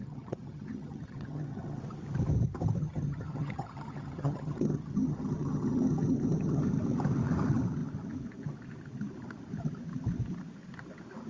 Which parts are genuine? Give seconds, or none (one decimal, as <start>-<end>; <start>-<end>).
1.8-2.8; 6.6-11.3